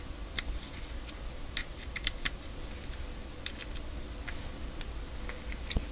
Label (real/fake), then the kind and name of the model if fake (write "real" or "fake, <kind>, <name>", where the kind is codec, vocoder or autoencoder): real